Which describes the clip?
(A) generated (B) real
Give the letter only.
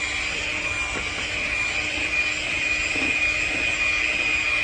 B